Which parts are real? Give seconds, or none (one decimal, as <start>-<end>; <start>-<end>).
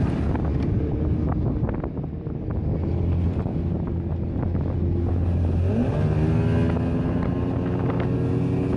0.0-8.8